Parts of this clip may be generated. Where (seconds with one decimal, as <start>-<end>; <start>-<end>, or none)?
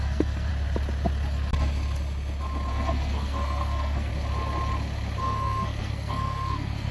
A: 0.0-0.5; 2.7-4.1; 5.2-6.9